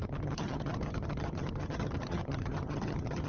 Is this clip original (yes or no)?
no